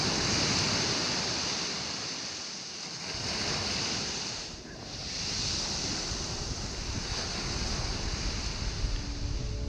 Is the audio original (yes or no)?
yes